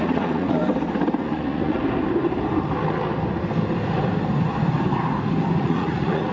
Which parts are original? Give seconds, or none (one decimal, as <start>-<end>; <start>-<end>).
0.6-1.2; 1.8-5.6

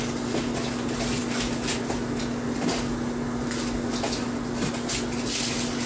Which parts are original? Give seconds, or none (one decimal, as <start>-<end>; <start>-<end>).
0.0-5.9

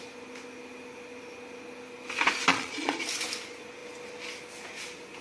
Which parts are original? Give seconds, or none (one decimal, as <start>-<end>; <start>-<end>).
0.0-2.5; 3.0-5.2

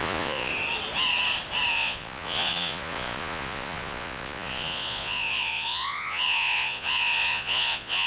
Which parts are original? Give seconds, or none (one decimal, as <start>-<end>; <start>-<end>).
0.5-1.7

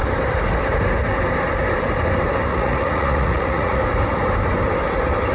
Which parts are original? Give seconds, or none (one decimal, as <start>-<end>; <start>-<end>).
0.0-2.5; 3.8-5.3

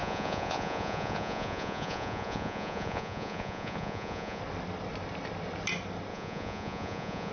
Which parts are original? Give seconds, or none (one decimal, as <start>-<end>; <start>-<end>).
4.4-6.1